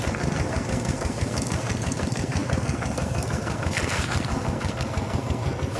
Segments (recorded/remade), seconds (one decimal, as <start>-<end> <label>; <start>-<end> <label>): 0.0-5.8 remade